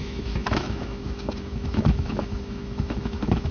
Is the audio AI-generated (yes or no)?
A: yes